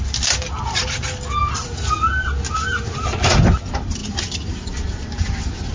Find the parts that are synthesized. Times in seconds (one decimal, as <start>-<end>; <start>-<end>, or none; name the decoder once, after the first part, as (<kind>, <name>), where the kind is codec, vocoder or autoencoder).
4.0-5.7 (vocoder, BigVGAN v2)